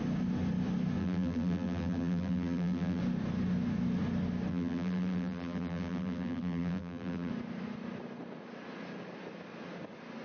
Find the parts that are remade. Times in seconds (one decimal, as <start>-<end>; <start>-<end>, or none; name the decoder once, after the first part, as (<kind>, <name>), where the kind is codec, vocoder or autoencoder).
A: 1.0-3.0 (vocoder, BigVGAN v2); 4.5-7.3